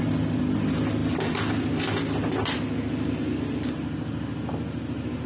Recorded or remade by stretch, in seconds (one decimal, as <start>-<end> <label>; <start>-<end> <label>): 0.0-5.3 recorded